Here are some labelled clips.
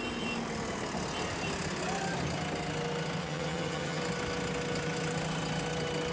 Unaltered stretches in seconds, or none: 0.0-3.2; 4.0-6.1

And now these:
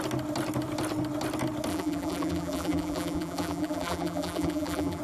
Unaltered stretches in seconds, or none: 0.0-1.7

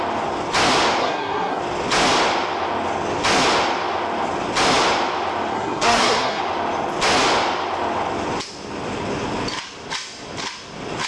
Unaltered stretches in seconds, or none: 0.0-1.0; 1.6-5.5; 6.4-11.1

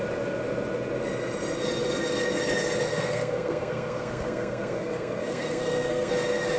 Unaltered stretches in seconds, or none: 0.0-2.9; 6.1-6.6

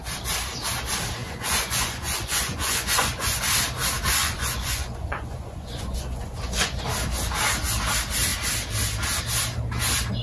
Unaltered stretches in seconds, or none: 0.0-1.2; 3.4-4.2; 6.8-10.2

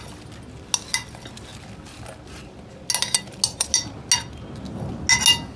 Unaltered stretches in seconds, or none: 0.0-5.6